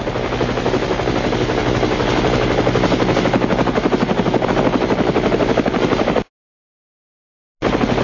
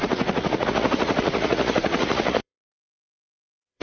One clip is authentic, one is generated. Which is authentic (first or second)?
first